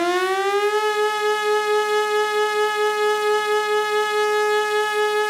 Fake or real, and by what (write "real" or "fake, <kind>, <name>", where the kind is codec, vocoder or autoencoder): real